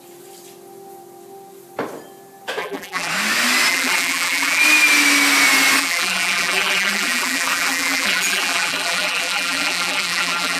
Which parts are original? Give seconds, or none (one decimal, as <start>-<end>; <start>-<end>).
0.0-2.6; 3.1-3.7; 4.6-5.8